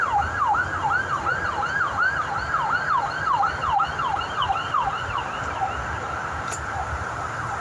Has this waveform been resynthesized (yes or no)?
no